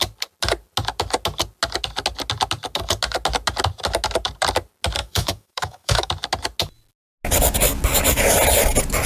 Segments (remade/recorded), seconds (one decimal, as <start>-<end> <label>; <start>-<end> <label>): 0.0-5.0 recorded; 5.0-6.1 remade; 6.1-9.1 recorded